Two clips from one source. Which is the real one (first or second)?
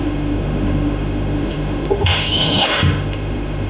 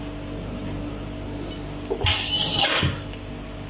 second